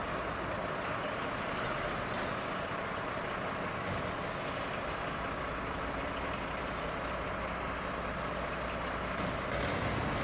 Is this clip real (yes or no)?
yes